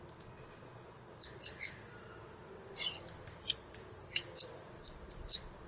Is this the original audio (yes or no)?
yes